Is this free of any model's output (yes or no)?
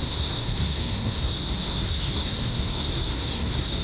no